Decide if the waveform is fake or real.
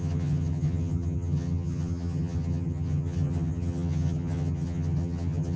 fake